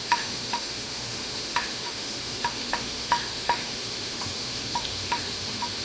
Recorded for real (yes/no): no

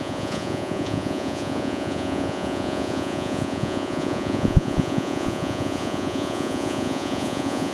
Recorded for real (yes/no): no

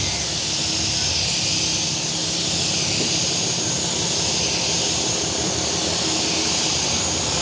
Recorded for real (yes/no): yes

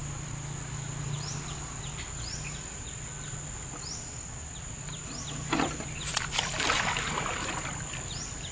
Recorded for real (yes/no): yes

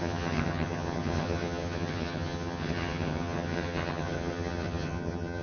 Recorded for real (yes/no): no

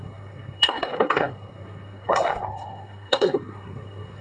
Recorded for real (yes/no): no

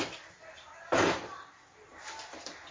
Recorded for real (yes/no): yes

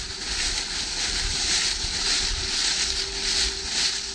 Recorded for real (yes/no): yes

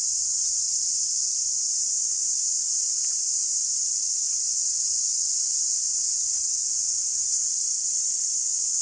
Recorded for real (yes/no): yes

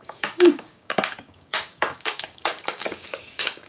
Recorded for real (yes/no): no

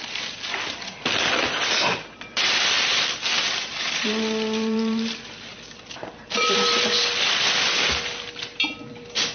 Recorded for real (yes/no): no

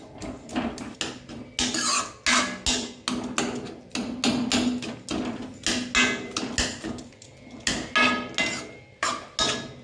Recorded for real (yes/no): yes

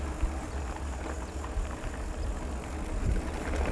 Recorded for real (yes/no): yes